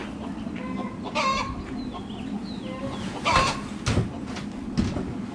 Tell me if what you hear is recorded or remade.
recorded